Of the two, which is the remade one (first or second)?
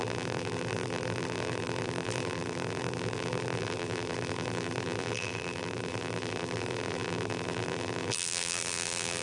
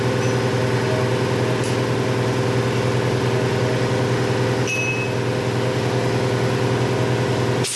first